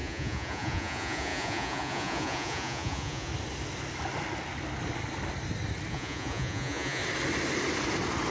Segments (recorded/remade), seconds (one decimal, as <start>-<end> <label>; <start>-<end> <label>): 0.0-3.3 remade; 3.3-5.9 recorded; 5.9-7.0 remade; 7.0-8.3 recorded